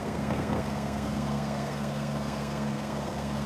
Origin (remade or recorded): remade